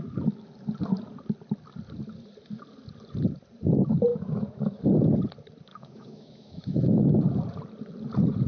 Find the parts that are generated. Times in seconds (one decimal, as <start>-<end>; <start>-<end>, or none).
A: 4.1-4.8; 5.7-6.8